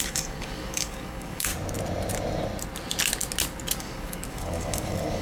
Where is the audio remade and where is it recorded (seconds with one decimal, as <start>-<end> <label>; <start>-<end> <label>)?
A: 0.0-1.5 remade; 1.5-3.8 recorded; 3.8-5.2 remade